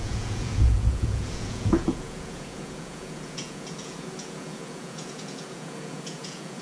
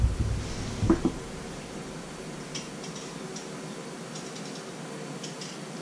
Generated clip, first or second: first